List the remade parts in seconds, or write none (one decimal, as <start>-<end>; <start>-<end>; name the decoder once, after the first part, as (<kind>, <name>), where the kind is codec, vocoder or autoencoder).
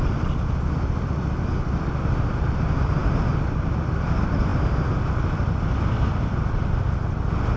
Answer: none